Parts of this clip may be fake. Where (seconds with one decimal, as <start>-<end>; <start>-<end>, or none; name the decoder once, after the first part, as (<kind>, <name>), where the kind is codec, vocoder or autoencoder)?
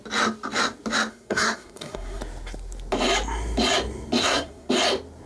1.1-2.2 (codec, SNAC); 4.2-4.7